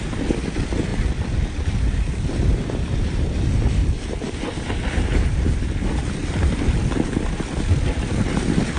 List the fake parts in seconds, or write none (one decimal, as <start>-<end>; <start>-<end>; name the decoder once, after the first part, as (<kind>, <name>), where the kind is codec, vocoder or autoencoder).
0.9-2.5 (vocoder, BigVGAN v2); 3.8-4.3; 6.2-8.8